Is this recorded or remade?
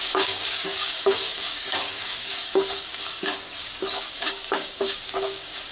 remade